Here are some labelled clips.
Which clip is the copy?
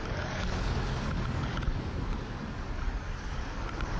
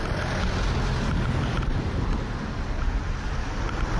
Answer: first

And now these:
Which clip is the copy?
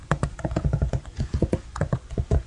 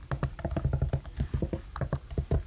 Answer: first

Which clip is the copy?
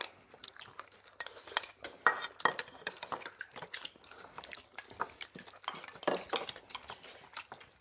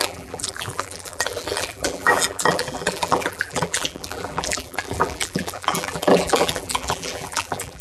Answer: second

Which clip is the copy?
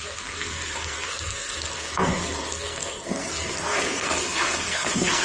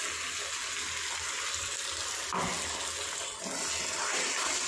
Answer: first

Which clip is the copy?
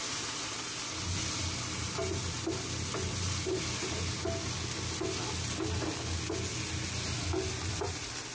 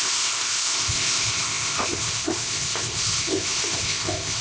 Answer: second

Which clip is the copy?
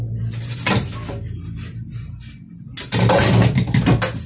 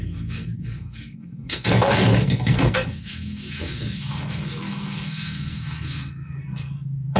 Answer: second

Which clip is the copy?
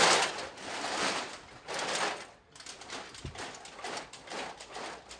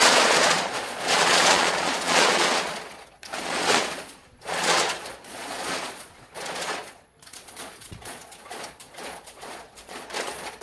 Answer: second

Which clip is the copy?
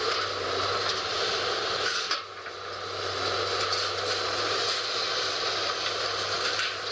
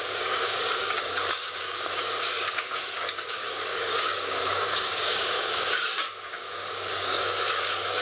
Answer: second